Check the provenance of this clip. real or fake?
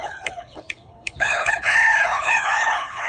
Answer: fake